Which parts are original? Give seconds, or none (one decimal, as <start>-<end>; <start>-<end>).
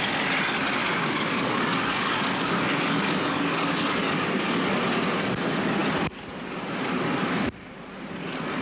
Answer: 0.0-0.8; 4.8-8.6